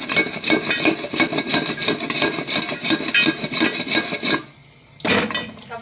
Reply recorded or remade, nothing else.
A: recorded